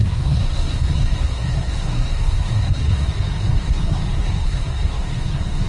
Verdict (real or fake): fake